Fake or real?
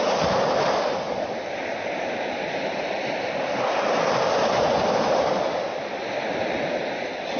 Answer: real